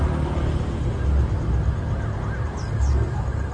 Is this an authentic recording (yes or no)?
yes